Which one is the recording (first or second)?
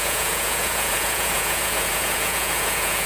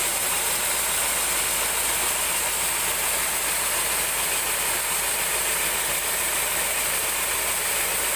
second